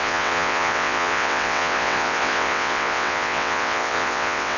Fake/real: fake